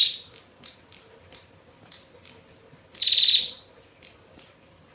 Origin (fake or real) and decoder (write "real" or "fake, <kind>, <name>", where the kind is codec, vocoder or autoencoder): real